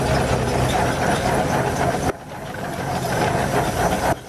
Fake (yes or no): no